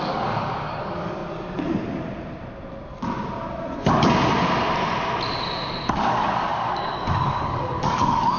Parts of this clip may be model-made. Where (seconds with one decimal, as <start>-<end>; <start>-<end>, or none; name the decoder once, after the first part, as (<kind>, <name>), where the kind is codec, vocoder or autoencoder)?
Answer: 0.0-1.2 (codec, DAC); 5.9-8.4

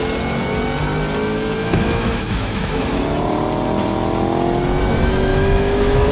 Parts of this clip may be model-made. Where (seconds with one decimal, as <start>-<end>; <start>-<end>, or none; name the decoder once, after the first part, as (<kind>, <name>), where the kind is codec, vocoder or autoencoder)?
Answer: 1.6-3.0 (autoencoder, DAC-VAE); 5.3-6.1

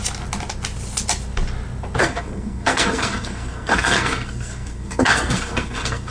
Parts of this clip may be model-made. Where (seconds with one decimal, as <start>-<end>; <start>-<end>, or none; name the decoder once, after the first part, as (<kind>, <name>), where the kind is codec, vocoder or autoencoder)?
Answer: 2.0-6.1 (codec, SNAC)

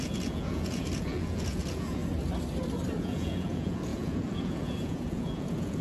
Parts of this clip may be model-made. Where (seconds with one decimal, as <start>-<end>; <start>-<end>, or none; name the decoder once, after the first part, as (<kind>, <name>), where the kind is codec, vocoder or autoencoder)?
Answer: 0.0-2.0 (vocoder, Vocos); 3.0-5.8